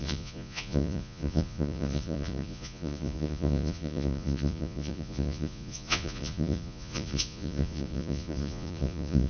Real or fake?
fake